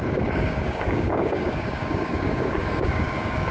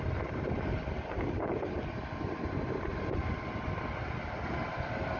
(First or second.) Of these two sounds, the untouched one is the second